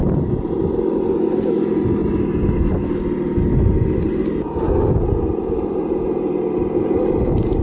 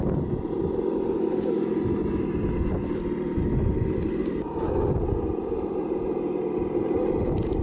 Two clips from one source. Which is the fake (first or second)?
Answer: second